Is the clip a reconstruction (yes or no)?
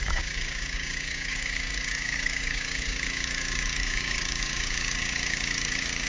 yes